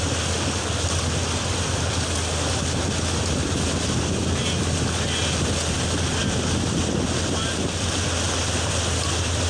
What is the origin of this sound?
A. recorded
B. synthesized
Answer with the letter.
A